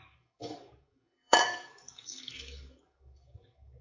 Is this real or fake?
fake